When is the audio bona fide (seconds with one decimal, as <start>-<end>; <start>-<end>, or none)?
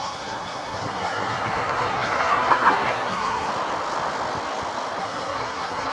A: 3.5-5.0